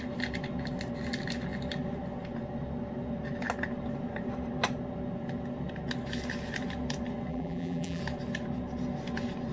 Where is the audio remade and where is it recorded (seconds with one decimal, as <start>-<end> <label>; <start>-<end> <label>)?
0.0-7.3 recorded; 7.3-8.0 remade; 8.0-9.5 recorded

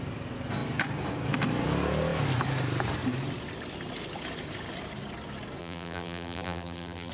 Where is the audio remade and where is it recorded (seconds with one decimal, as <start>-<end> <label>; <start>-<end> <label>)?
0.0-5.6 recorded; 5.6-7.1 remade

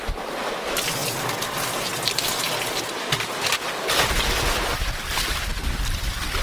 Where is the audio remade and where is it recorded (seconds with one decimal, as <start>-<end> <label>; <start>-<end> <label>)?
0.0-6.4 recorded

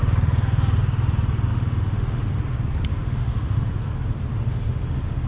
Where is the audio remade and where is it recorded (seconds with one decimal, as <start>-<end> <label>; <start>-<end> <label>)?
0.0-1.5 recorded; 1.5-2.3 remade; 2.3-2.9 recorded; 2.9-3.6 remade; 3.6-4.3 recorded; 4.3-5.3 remade

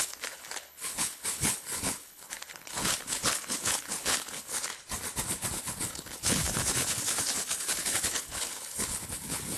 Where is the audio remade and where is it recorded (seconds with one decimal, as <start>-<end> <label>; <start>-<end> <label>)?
0.0-4.7 remade; 4.7-5.5 recorded; 5.5-9.6 remade